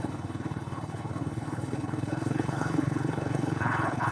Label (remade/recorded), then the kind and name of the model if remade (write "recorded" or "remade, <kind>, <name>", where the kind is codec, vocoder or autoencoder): remade, codec, HILCodec